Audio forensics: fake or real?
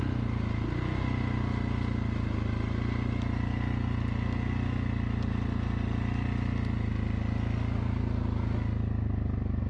real